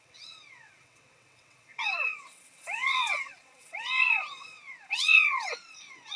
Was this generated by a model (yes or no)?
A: yes